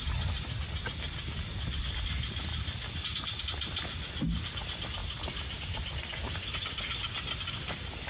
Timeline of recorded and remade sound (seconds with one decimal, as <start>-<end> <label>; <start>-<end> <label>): 0.0-2.5 recorded; 2.5-3.4 remade; 3.4-8.1 recorded